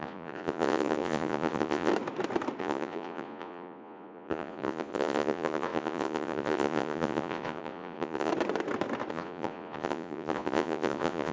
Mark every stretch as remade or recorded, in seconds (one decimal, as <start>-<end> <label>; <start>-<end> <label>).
0.0-1.9 remade; 1.9-2.6 recorded; 2.6-8.3 remade; 8.3-9.1 recorded; 9.1-11.3 remade